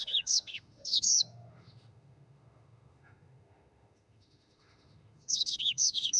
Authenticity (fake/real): fake